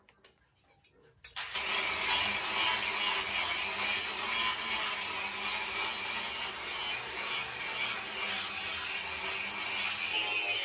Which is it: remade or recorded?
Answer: recorded